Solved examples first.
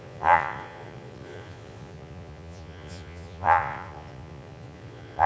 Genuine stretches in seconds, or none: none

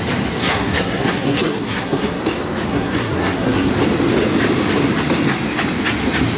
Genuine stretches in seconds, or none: 0.0-0.4; 2.2-2.7; 3.7-6.4